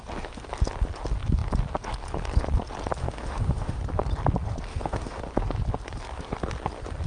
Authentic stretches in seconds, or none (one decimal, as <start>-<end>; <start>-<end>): 0.0-3.0; 3.8-4.7; 5.2-7.1